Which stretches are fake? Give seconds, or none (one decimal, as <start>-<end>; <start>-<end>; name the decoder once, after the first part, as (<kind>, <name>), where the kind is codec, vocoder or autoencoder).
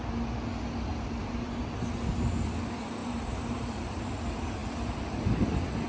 0.9-1.7 (vocoder, BigVGAN v2); 3.0-4.0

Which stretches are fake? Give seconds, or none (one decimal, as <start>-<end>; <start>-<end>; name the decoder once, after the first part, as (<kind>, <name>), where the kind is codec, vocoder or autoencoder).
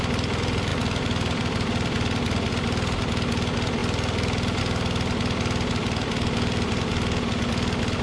0.7-2.5 (vocoder, BigVGAN v2); 5.8-6.8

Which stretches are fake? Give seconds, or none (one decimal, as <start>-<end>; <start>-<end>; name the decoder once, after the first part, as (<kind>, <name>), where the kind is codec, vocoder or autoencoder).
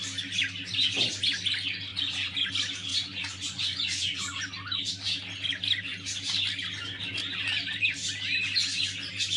1.9-2.5 (vocoder, Vocos); 2.9-4.4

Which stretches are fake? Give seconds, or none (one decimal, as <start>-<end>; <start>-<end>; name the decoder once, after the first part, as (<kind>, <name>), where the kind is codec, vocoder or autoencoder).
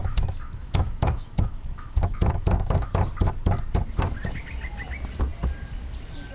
0.0-2.9 (autoencoder, DAC-VAE)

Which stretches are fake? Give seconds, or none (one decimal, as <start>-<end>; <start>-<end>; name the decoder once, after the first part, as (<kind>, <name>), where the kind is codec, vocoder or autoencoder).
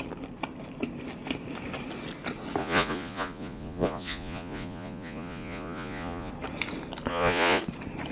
2.6-6.3 (vocoder, Vocos); 7.1-7.6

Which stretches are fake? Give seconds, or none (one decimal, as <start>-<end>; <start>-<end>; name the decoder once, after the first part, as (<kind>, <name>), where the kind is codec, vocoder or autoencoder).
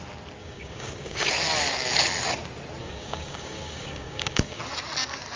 0.4-1.3 (codec, DAC); 2.8-4.6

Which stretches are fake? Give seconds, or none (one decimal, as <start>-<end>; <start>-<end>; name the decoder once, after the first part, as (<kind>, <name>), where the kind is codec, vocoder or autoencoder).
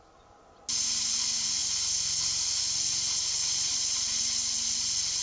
3.7-5.2 (vocoder, BigVGAN v2)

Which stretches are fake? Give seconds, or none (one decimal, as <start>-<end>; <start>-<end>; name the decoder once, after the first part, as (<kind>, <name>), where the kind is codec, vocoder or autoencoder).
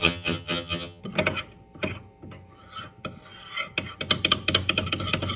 0.0-1.0 (vocoder, HiFi-GAN)